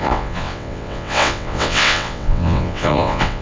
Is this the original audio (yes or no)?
no